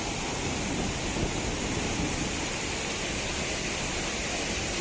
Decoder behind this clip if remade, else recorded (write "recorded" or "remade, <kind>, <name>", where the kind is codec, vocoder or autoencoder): recorded